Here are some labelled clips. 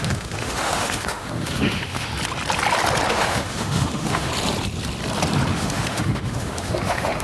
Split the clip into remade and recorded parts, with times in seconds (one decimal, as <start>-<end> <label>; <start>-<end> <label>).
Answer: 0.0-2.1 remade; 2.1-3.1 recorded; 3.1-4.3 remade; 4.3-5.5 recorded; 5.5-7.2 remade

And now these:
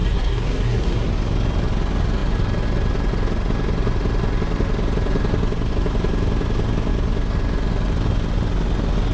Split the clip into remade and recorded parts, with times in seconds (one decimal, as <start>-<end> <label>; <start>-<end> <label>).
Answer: 0.0-1.1 remade; 1.1-9.1 recorded

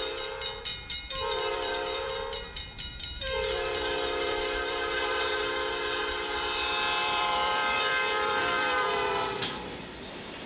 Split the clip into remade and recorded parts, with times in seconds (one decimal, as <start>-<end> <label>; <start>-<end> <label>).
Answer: 0.0-0.7 recorded; 0.7-4.9 remade; 4.9-7.0 recorded; 7.0-10.1 remade; 10.1-10.5 recorded

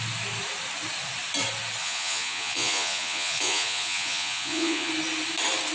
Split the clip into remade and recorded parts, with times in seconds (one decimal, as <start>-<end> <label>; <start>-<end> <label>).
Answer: 0.0-1.8 recorded; 1.8-4.9 remade; 4.9-5.7 recorded

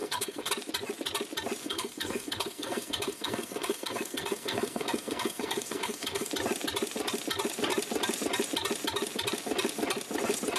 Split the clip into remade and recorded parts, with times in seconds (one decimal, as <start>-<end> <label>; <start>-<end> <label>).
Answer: 0.0-0.5 remade; 0.5-1.6 recorded; 1.6-6.3 remade; 6.3-10.6 recorded